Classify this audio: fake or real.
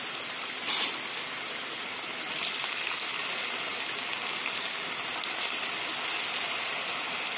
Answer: real